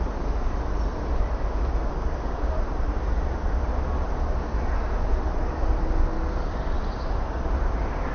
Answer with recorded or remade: recorded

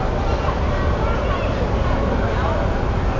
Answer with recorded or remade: recorded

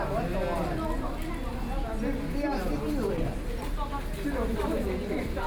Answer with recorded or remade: recorded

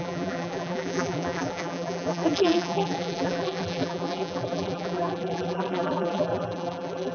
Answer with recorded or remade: remade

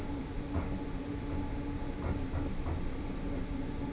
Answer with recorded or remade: recorded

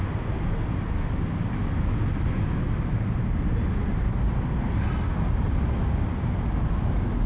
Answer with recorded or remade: recorded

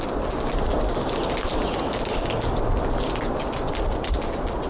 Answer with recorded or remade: recorded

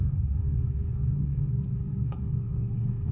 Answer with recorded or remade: remade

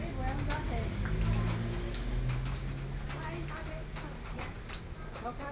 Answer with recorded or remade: recorded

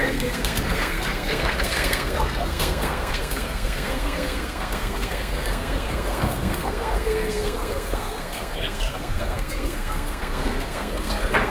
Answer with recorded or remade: remade